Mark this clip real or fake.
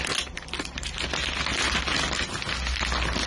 real